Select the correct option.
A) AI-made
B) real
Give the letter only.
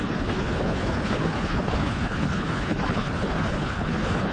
A